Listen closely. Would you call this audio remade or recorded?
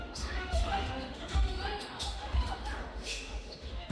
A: remade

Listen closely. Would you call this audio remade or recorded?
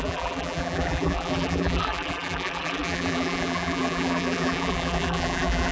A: remade